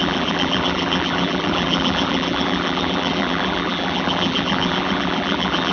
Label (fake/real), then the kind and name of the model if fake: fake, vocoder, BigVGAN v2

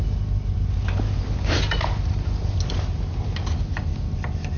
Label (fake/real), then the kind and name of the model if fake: real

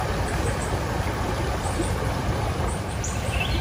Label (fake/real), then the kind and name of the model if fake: real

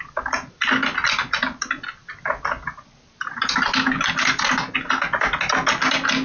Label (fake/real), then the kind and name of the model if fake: real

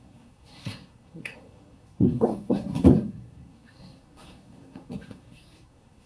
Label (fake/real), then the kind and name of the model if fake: fake, codec, SNAC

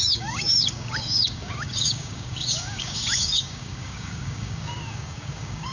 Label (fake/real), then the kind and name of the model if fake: fake, codec, DAC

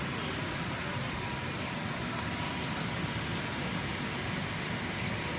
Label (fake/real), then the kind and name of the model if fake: real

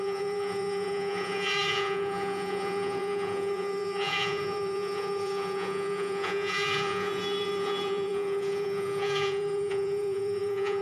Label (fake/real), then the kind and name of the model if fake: fake, vocoder, Vocos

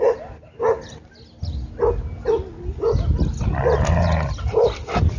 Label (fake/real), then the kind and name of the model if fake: real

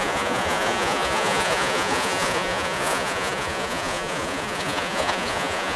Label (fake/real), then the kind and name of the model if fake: fake, vocoder, Vocos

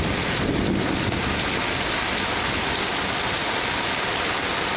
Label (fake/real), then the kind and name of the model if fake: real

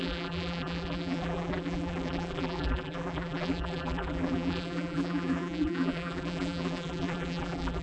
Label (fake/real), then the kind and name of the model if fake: fake, vocoder, BigVGAN v2